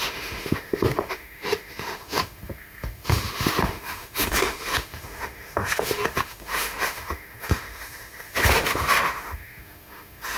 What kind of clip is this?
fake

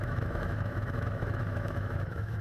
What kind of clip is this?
fake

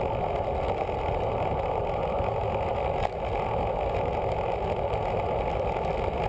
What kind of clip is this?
real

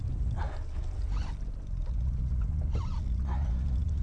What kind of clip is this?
real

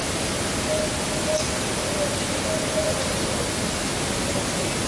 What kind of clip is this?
real